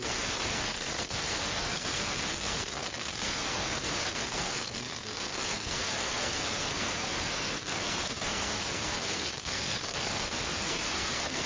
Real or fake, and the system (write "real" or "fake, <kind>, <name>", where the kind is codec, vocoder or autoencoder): fake, codec, SNAC